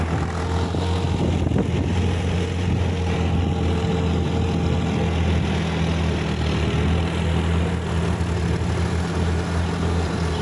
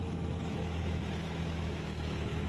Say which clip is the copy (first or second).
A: second